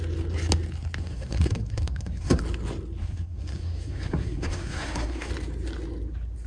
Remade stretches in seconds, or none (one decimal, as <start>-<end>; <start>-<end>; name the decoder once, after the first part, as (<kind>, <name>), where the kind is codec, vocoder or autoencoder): 1.0-2.4 (codec, SNAC); 3.0-5.3